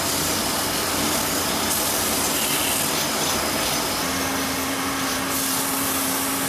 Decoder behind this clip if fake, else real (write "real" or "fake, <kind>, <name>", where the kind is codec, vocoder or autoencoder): real